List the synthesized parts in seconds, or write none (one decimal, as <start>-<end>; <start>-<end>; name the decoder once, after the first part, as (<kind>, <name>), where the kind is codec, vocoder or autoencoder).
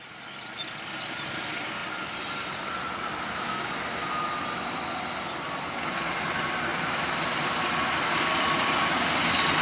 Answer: none